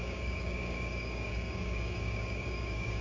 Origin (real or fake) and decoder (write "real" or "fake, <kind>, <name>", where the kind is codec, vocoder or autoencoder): fake, codec, DAC